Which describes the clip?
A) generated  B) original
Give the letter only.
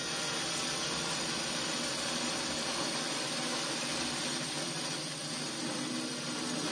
B